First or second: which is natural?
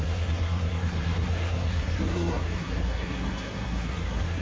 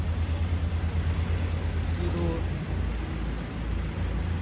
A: second